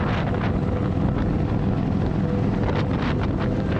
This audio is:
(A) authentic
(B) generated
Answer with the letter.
A